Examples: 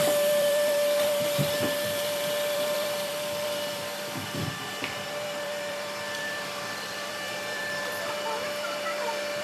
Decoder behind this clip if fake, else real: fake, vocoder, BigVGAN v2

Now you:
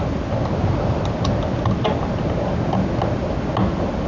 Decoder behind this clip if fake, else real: real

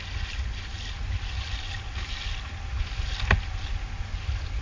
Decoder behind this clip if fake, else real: real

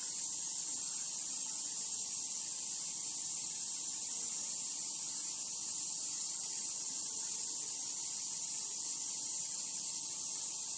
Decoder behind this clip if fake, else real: real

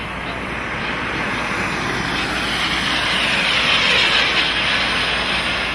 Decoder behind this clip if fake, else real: real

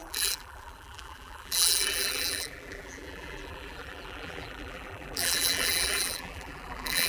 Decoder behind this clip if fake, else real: fake, vocoder, BigVGAN v2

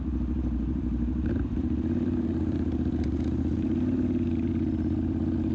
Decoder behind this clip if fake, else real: fake, vocoder, BigVGAN v2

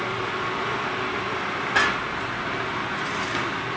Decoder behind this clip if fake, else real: real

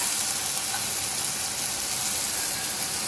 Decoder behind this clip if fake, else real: real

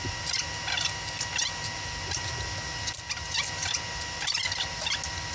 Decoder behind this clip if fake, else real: real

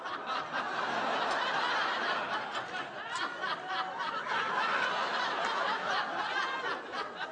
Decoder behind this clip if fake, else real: real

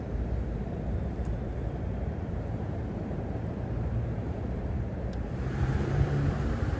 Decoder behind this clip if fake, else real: fake, vocoder, BigVGAN v2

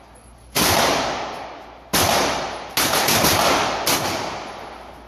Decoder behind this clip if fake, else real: real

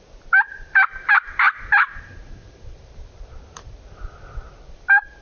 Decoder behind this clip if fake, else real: fake, vocoder, BigVGAN v2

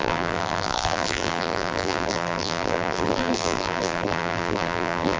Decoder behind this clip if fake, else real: fake, vocoder, BigVGAN v2